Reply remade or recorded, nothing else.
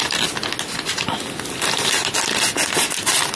recorded